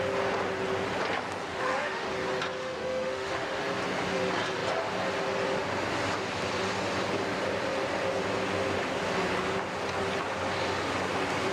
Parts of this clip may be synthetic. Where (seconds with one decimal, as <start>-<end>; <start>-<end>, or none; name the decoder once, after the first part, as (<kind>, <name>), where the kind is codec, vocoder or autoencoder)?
1.5-2.1 (autoencoder, DAC-VAE); 2.6-3.6